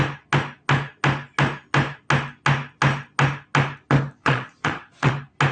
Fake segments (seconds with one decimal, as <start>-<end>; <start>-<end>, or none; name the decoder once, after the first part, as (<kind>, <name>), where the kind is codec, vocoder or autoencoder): 4.2-5.1 (vocoder, Vocos)